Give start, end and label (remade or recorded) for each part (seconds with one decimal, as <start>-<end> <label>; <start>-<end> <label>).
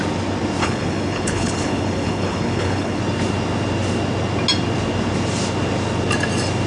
0.0-0.6 recorded; 0.6-3.0 remade; 3.0-6.7 recorded